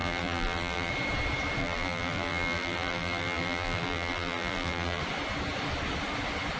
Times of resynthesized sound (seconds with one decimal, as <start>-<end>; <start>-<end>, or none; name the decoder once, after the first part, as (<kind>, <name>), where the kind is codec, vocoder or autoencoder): 0.0-0.9 (vocoder, BigVGAN v2); 1.6-5.0